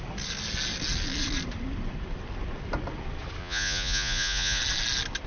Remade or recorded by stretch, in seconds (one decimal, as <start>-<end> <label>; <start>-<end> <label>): 0.0-3.4 recorded; 3.4-4.6 remade; 4.6-5.3 recorded